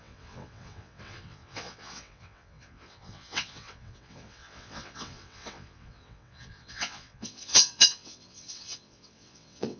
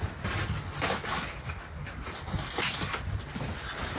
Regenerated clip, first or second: first